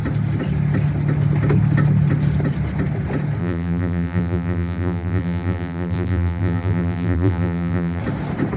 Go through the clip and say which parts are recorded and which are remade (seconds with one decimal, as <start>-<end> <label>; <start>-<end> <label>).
0.0-3.4 recorded; 3.4-8.0 remade; 8.0-8.6 recorded